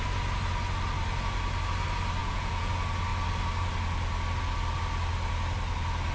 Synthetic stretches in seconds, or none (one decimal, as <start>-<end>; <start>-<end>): 2.2-2.7